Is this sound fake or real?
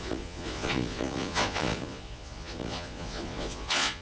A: fake